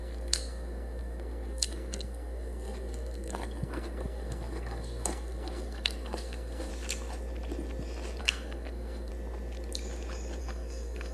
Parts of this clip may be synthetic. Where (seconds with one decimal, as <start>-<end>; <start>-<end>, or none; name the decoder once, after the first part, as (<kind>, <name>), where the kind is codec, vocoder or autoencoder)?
0.0-6.7 (codec, SNAC); 8.2-9.1; 10.4-11.1